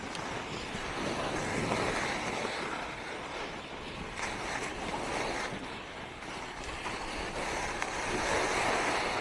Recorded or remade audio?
recorded